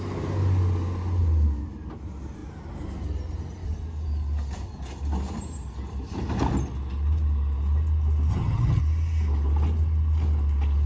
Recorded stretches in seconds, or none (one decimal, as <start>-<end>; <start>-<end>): 0.0-8.3; 8.8-10.9